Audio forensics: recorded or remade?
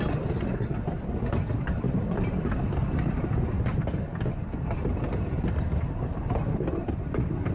recorded